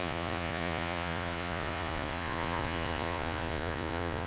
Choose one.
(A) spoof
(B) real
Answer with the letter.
A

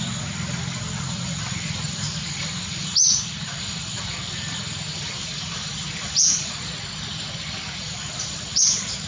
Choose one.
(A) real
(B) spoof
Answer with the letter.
A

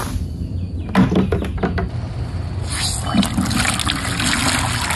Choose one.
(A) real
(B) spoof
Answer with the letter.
A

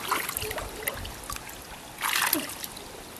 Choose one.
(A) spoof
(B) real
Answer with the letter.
B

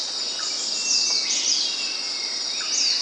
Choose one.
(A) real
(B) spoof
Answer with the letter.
A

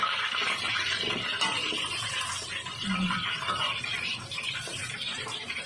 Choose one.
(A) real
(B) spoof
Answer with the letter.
B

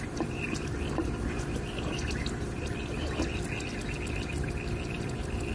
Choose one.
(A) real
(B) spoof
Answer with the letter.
A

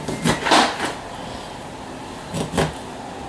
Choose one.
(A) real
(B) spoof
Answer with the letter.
A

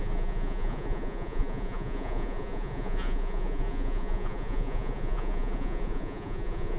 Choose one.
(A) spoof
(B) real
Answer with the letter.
A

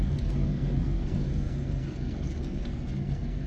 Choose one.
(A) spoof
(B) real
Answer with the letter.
A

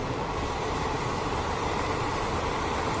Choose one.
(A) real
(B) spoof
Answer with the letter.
A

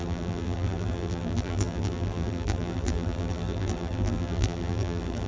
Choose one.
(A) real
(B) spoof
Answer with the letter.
B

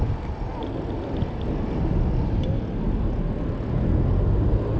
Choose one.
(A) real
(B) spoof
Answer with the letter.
A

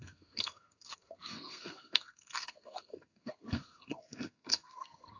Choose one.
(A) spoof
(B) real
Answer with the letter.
A